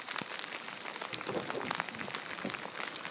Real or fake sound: real